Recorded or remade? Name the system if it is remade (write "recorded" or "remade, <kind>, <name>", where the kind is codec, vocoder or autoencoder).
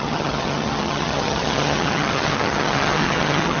remade, vocoder, HiFi-GAN